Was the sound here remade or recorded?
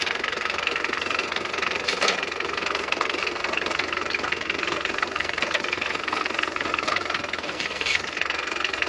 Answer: remade